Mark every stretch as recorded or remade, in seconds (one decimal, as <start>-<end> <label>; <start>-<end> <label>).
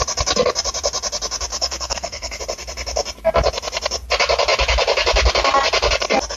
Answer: 0.0-1.5 recorded; 1.5-2.4 remade; 2.4-6.4 recorded